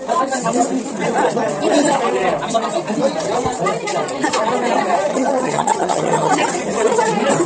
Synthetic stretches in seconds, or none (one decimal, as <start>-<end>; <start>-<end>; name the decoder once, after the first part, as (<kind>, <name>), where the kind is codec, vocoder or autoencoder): 5.1-6.3 (vocoder, HiFi-GAN)